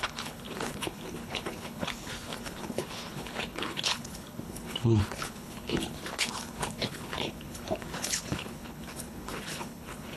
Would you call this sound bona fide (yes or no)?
no